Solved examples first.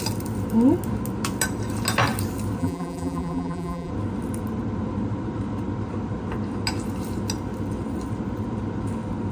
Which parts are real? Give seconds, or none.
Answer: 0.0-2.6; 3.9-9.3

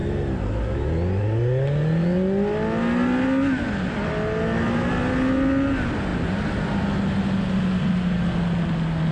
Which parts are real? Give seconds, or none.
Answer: 0.0-9.1

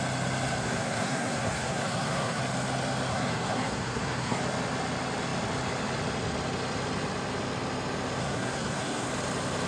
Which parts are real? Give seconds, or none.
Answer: 0.0-0.6; 2.4-3.1; 4.4-8.2; 9.1-9.7

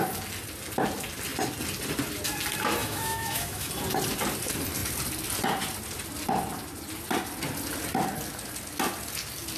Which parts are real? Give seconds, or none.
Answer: 0.0-2.8; 3.7-9.6

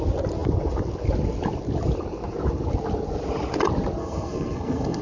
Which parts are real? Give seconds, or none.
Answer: 0.0-4.0

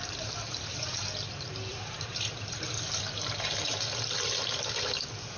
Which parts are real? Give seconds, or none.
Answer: 0.9-1.7; 4.9-5.4